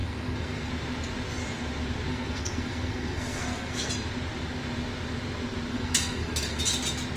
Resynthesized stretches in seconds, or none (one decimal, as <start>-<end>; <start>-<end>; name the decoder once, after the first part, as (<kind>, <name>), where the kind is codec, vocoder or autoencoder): 0.0-0.7 (codec, SNAC); 2.1-3.9; 5.7-6.6